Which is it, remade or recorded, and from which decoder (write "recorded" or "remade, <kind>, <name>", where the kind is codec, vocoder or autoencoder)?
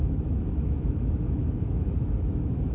remade, autoencoder, DAC-VAE